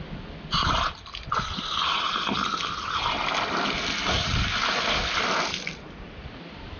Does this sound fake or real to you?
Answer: real